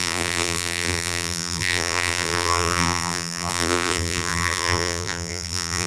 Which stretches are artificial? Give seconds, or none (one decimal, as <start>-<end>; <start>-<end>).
0.0-5.9